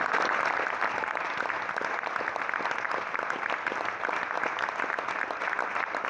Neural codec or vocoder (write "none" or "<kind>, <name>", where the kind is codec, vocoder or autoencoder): none